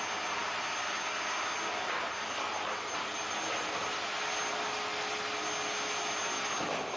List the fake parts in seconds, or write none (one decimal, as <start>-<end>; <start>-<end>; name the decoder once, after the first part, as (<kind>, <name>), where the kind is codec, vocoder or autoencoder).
none